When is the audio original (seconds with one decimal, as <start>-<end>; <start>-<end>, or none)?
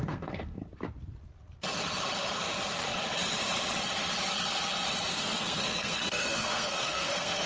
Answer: 0.6-5.1